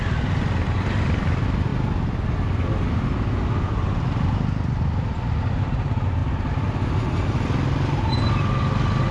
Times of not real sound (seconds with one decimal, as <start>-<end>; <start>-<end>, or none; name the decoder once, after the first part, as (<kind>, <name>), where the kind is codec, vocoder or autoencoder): none

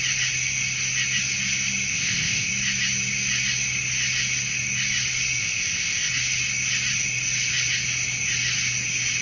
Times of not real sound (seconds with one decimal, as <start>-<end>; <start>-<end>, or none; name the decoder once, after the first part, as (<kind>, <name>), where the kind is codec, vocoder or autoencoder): 1.9-2.5 (codec, ZipCodec); 5.4-6.1

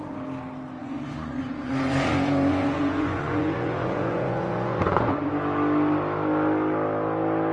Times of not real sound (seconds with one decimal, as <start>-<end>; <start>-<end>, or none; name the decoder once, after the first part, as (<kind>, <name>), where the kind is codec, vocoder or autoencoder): 0.8-5.3 (vocoder, Vocos)

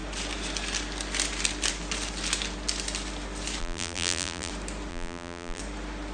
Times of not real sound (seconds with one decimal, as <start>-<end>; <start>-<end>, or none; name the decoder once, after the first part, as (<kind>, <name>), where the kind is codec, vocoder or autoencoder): 3.6-4.5 (vocoder, BigVGAN v2); 4.9-5.6

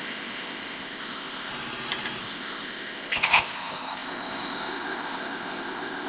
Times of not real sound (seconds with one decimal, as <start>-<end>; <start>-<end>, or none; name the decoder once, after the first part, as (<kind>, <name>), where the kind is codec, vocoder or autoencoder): 0.0-1.5 (codec, ZipCodec); 2.2-6.1